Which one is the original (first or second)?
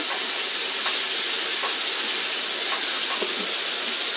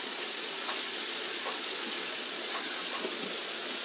first